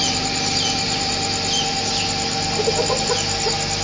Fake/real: real